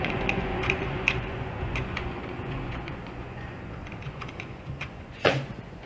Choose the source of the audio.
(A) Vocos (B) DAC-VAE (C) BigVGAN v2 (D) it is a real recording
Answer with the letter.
A